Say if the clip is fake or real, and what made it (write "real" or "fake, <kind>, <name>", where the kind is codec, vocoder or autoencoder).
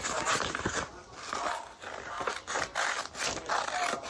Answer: real